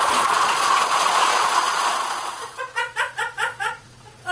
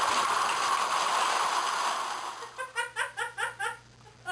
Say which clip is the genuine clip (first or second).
second